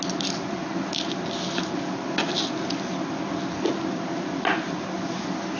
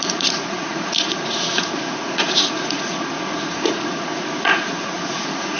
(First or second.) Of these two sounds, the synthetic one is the second